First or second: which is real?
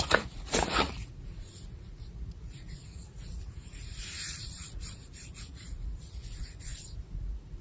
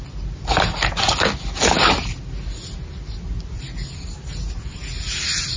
second